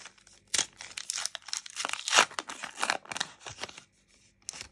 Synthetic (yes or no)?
no